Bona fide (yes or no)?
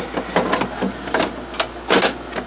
yes